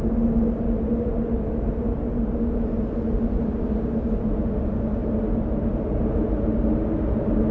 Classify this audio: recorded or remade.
recorded